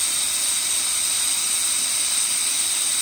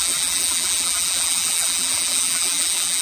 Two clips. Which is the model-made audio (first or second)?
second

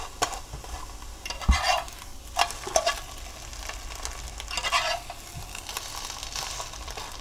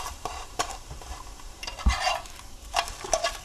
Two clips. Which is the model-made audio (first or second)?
second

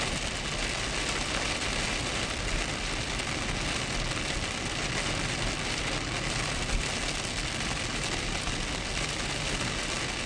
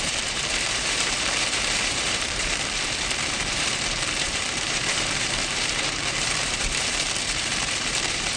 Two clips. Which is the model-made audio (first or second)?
second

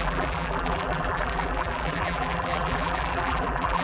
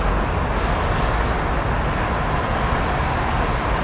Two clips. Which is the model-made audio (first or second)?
first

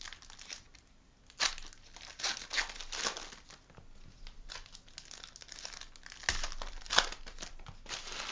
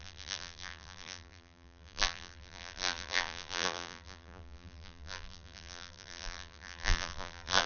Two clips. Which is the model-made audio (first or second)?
second